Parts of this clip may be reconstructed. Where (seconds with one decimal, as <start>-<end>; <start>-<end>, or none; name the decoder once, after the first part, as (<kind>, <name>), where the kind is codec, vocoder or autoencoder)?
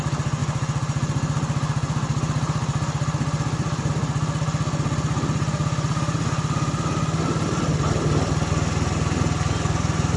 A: none